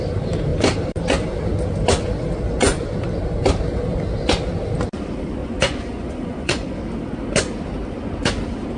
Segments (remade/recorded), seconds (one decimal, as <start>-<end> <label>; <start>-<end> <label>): 0.0-5.4 recorded; 5.4-6.8 remade; 6.8-8.8 recorded